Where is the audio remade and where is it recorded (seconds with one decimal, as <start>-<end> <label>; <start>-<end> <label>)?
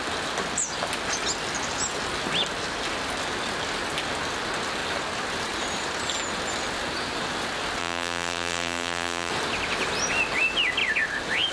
0.0-7.8 recorded; 7.8-9.3 remade; 9.3-11.5 recorded